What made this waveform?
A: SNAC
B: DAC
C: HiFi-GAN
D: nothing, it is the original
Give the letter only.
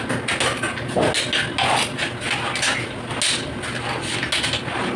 D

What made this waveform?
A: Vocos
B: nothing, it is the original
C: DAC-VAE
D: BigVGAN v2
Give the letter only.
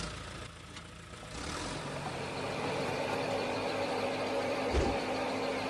D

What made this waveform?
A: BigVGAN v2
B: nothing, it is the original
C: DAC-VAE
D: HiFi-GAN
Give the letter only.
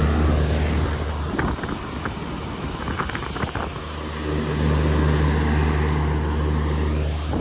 B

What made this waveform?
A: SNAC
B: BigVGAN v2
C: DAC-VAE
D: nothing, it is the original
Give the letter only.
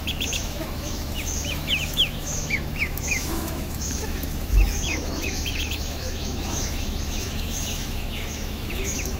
C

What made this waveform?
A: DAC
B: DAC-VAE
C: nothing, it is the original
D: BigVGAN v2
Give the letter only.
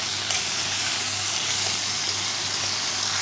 A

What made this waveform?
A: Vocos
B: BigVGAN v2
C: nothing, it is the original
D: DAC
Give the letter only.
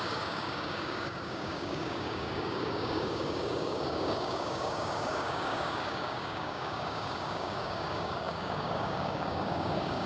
D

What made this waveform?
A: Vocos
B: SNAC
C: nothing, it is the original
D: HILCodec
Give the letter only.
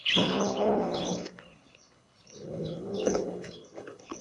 D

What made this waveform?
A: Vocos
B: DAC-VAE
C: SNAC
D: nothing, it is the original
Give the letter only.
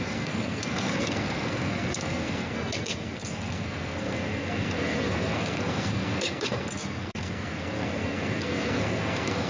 C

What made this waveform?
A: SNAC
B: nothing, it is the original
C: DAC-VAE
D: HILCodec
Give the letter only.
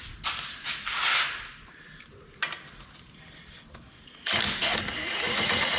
B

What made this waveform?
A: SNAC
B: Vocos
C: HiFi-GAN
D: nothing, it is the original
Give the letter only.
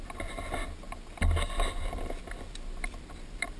D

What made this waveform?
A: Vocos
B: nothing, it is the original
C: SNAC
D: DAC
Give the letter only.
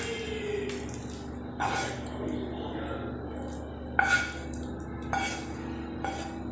B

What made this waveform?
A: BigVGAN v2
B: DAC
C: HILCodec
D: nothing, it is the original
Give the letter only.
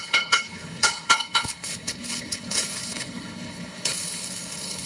C